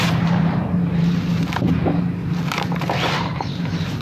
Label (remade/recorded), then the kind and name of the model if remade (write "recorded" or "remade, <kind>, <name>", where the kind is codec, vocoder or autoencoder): remade, vocoder, BigVGAN v2